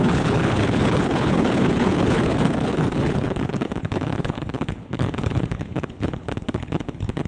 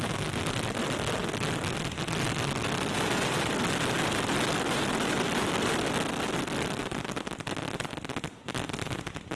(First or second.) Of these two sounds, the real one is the second